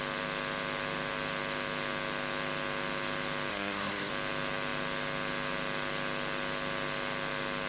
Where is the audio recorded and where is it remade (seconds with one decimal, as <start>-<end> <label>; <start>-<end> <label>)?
0.0-3.5 recorded; 3.5-4.1 remade; 4.1-7.7 recorded